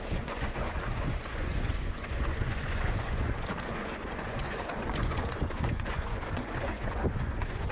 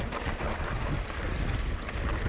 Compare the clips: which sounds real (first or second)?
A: second